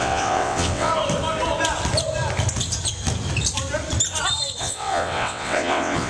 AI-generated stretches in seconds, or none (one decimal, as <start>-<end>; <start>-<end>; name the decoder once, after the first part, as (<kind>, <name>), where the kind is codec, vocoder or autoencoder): 0.0-0.9 (vocoder, WaveNeXt); 4.6-6.1